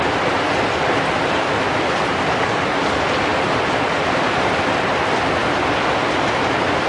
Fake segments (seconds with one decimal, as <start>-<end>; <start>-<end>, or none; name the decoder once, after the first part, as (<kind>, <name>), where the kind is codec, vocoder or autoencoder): none